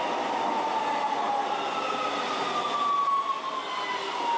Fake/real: real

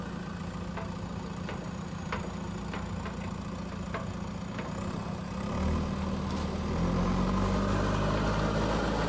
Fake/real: real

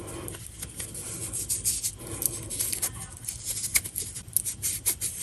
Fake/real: real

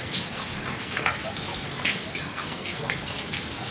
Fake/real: fake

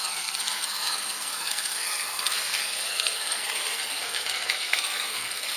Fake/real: fake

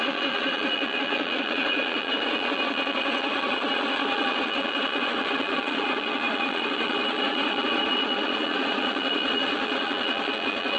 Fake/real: fake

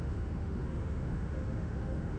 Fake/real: fake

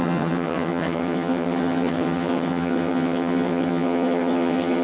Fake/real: fake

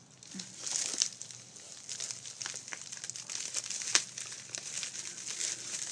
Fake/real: real